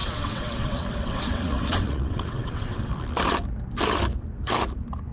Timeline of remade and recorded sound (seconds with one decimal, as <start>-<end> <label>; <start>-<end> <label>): 0.0-2.9 remade; 2.9-5.1 recorded